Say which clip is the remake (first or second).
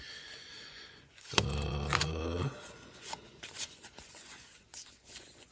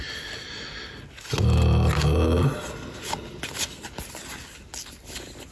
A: first